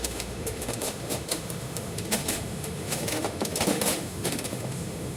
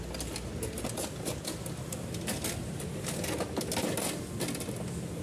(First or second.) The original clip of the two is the second